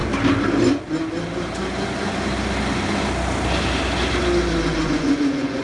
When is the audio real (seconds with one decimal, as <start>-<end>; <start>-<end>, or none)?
0.0-4.7